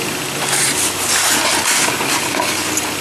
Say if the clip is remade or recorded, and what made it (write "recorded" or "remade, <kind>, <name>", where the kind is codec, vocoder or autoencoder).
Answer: recorded